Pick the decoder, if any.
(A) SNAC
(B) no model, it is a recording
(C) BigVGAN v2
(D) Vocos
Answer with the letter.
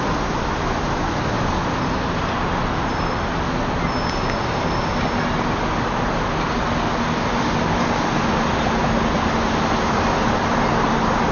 B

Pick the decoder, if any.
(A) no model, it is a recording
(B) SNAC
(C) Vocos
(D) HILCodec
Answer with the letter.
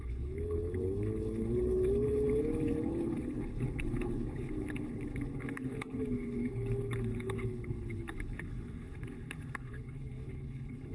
D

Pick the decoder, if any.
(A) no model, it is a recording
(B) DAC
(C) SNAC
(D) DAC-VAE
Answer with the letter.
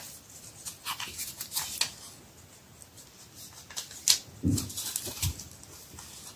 A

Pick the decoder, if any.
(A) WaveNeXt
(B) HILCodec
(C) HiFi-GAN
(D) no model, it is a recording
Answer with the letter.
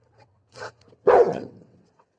A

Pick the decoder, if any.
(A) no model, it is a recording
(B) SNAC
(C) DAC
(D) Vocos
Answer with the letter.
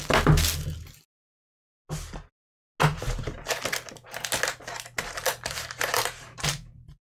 A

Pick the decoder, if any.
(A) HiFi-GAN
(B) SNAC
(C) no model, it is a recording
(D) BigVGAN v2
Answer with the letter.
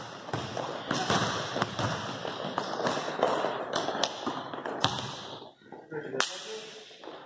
C